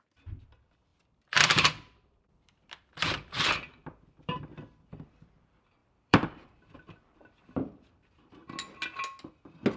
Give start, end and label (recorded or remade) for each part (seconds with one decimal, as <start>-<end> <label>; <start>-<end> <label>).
0.0-0.9 recorded; 0.9-4.4 remade; 4.4-5.8 recorded; 5.8-8.3 remade; 8.3-9.8 recorded